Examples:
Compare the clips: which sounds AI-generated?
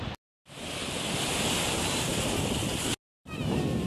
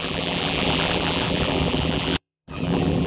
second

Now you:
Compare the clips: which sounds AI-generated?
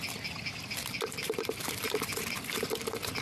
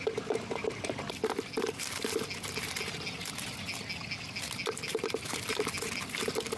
first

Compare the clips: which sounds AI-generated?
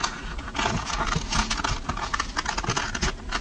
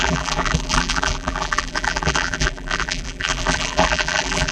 second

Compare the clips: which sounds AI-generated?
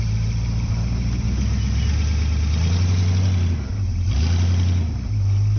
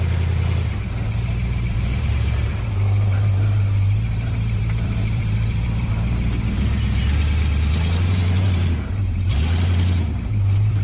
second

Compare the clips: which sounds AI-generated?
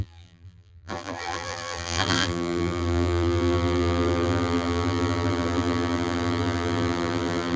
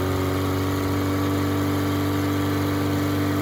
first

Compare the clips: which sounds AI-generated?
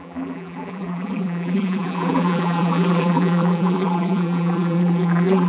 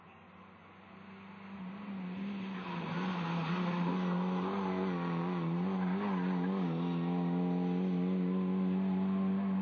first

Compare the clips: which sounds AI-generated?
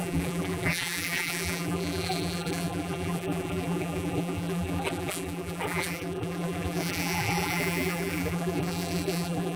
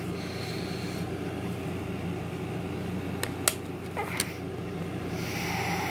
first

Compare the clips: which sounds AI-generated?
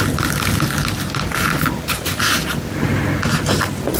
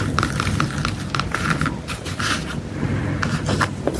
second